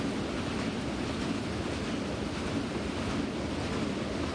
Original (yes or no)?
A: yes